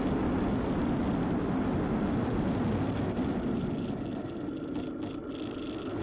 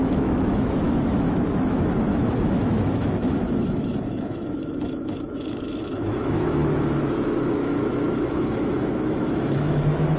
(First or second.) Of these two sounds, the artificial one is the second